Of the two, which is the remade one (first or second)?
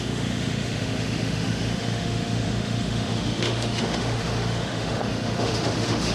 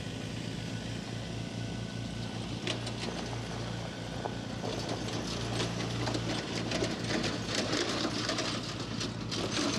first